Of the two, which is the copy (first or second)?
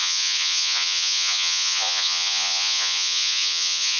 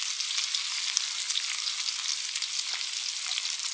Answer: first